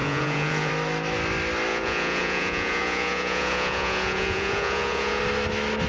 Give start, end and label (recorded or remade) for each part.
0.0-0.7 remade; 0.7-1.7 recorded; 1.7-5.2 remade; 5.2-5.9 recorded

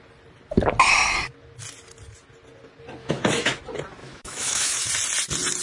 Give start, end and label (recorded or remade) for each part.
0.0-3.0 recorded; 3.0-3.6 remade; 3.6-4.0 recorded; 4.0-4.9 remade; 4.9-5.6 recorded